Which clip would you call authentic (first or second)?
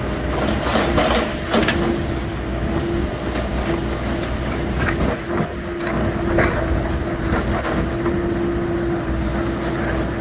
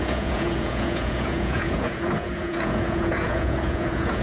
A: first